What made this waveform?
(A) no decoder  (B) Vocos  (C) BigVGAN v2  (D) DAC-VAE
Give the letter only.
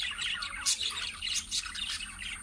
A